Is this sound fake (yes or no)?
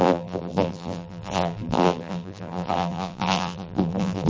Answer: yes